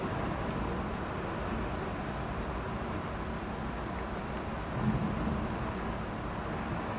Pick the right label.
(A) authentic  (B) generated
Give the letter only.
A